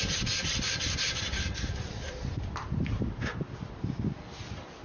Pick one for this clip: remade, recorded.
recorded